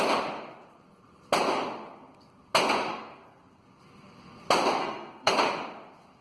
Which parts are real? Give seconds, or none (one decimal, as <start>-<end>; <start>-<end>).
0.0-2.9; 3.6-4.8; 5.3-6.2